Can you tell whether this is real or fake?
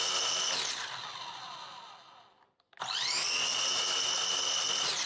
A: real